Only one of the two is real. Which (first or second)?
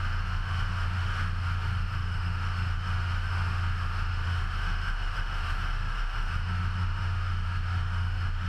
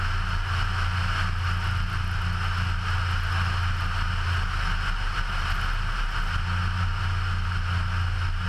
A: second